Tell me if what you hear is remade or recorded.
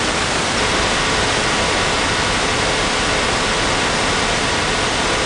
recorded